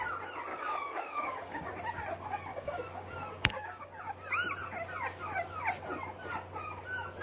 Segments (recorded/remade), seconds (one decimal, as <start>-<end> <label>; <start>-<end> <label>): 0.0-0.5 recorded; 0.5-1.7 remade; 1.7-2.5 recorded; 2.5-4.0 remade; 4.0-7.2 recorded